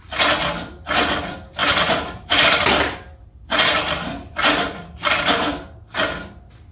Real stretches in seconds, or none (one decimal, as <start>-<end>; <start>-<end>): 0.0-1.6; 5.2-6.7